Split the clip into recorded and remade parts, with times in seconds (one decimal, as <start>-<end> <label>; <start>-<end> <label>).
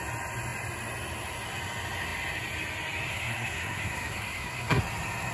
0.0-3.1 recorded; 3.1-4.8 remade; 4.8-5.3 recorded